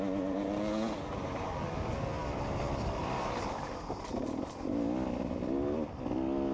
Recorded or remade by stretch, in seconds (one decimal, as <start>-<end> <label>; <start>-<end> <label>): 0.0-6.5 recorded